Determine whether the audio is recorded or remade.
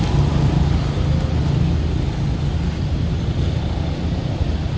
recorded